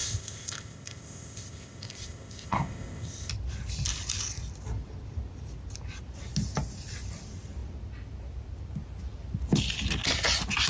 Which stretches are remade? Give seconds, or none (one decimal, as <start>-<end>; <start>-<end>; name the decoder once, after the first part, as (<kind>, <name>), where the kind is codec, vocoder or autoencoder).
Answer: 0.0-3.3 (codec, ZipCodec)